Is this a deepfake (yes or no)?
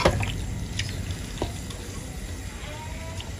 no